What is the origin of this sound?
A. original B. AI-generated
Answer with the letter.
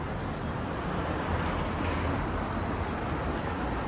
A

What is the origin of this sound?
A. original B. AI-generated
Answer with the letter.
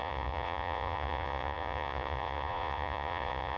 B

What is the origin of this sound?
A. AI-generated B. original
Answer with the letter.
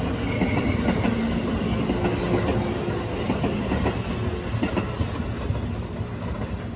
B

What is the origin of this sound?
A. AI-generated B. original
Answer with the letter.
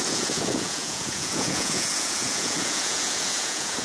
A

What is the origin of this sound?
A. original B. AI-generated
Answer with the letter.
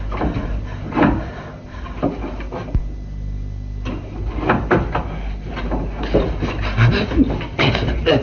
A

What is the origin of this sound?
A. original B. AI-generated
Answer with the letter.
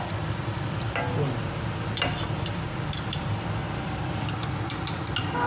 A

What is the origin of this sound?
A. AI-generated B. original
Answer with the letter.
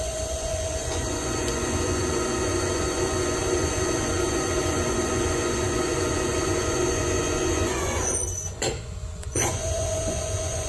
A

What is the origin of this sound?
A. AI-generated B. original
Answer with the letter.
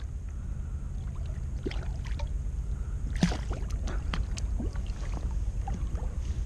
B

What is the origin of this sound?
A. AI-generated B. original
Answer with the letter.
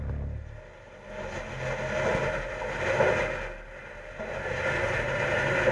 B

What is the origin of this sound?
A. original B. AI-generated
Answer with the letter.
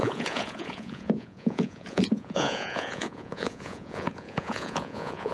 B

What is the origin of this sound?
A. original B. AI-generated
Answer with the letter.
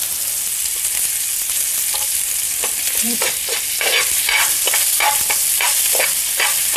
A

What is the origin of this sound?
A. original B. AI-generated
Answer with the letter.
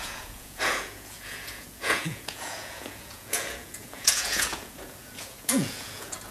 B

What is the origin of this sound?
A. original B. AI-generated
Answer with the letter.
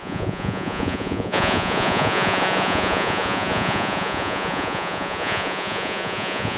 B